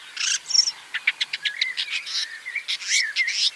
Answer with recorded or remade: recorded